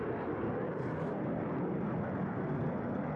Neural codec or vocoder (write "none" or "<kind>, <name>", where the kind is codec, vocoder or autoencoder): none